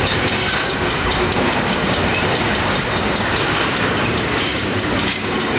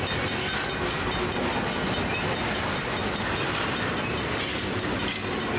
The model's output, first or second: first